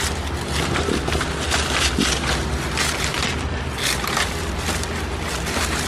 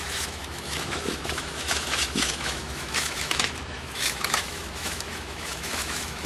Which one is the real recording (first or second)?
first